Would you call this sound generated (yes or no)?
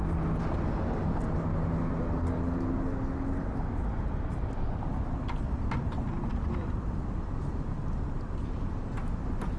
no